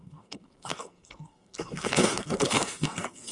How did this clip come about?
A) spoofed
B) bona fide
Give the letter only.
A